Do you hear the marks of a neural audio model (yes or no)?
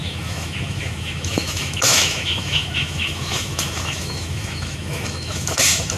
yes